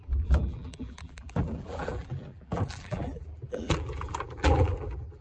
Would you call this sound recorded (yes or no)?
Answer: no